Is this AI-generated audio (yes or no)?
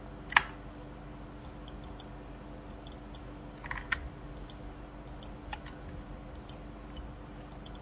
no